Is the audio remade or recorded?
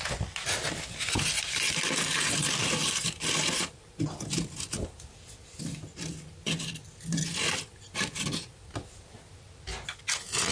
recorded